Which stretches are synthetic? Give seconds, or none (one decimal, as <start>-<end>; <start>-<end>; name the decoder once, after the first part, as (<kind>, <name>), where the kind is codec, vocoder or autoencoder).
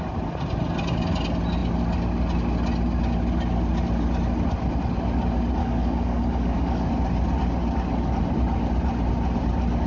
5.6-6.9 (codec, DAC)